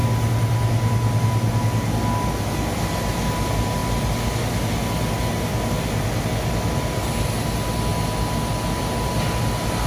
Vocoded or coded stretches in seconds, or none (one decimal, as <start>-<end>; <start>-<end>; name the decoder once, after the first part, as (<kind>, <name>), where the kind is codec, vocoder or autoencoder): none